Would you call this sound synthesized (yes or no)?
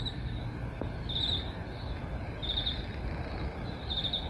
no